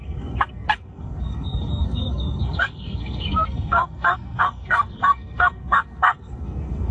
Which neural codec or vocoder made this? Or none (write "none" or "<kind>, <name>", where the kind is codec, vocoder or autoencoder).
codec, SNAC